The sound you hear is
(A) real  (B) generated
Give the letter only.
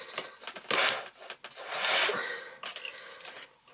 A